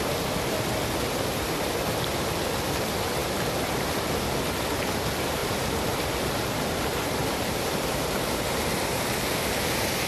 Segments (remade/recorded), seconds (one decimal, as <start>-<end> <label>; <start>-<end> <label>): 0.0-3.2 recorded; 3.2-4.2 remade; 4.2-5.4 recorded; 5.4-9.4 remade; 9.4-10.1 recorded